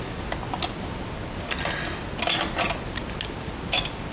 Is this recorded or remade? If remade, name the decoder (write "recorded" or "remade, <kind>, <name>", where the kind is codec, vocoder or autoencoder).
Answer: recorded